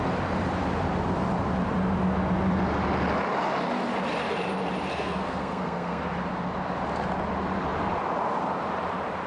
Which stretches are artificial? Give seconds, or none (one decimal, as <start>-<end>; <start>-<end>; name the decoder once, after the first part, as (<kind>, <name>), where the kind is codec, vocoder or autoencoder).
4.9-6.0 (codec, SNAC)